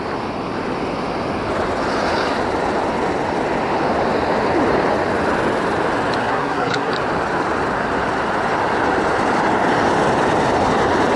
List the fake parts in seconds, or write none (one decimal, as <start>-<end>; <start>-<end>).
6.2-6.9